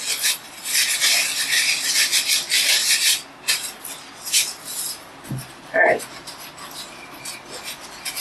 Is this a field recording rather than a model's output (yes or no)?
yes